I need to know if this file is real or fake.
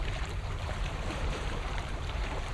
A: fake